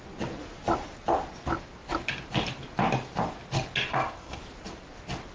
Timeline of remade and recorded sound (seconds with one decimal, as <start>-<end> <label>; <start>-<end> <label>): 0.0-3.9 recorded; 3.9-4.4 remade; 4.4-5.3 recorded